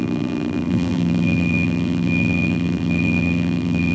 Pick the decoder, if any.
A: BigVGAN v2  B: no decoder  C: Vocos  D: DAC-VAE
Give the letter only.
A